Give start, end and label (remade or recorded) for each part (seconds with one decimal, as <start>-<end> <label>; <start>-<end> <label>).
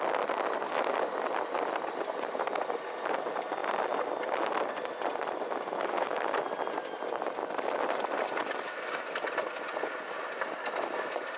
0.0-11.4 recorded